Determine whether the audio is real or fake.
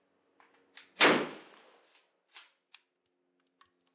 real